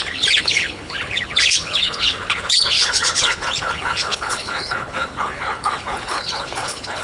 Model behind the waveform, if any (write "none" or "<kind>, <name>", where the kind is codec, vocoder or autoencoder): codec, HILCodec